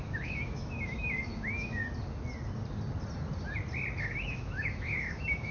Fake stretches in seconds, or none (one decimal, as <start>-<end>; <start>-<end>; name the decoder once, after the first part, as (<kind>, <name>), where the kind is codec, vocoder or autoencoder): 0.0-1.8 (autoencoder, DAC-VAE); 4.0-5.5